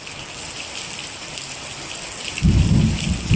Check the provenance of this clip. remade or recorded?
recorded